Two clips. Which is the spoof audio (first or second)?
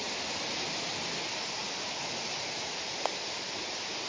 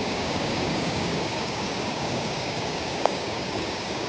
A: second